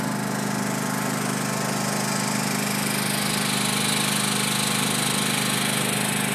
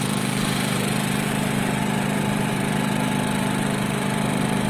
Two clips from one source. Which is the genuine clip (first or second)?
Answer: first